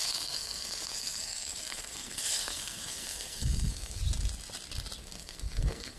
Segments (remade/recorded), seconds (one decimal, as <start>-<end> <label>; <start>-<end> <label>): 0.0-4.0 remade; 4.0-5.0 recorded; 5.0-6.0 remade